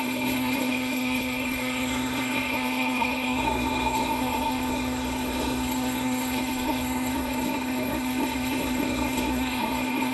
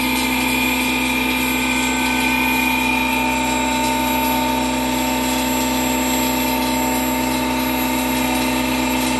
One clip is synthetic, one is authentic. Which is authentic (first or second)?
second